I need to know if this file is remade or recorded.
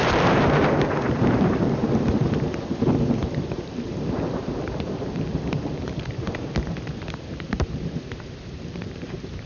remade